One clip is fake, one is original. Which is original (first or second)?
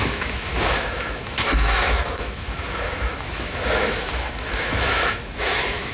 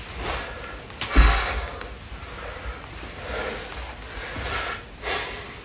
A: second